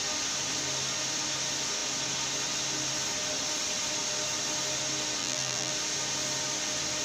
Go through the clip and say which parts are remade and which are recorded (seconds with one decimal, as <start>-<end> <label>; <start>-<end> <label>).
0.0-5.2 recorded; 5.2-5.7 remade; 5.7-7.0 recorded